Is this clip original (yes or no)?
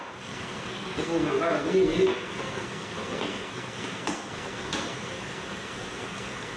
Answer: no